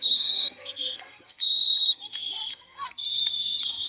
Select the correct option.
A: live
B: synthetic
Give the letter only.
B